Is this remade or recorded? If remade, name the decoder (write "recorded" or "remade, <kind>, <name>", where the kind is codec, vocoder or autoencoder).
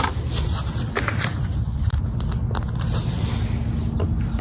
recorded